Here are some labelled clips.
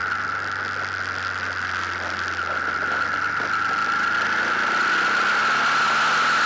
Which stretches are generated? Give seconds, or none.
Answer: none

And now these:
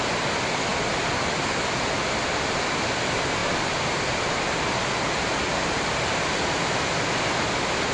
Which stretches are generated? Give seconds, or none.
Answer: none

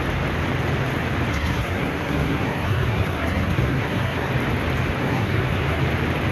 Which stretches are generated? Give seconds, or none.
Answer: 1.3-4.3 (codec, SNAC); 5.0-5.8

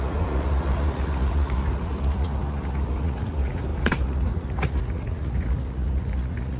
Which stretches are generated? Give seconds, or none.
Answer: 0.0-6.6 (vocoder, Vocos)